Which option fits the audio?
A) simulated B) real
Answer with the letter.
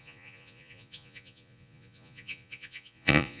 A